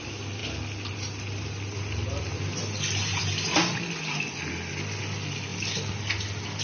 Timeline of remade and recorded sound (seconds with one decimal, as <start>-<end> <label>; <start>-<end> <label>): 0.0-6.6 recorded